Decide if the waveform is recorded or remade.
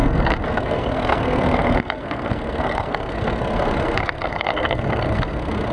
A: remade